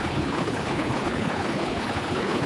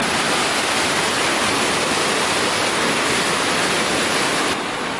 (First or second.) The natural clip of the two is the second